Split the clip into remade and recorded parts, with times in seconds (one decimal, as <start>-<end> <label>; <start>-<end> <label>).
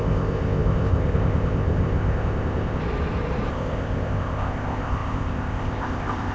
0.0-2.8 remade; 2.8-3.5 recorded; 3.5-6.3 remade